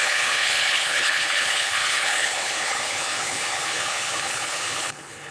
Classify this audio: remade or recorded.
remade